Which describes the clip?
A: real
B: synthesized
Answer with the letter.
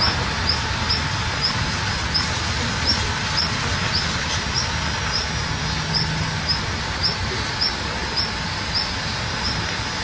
A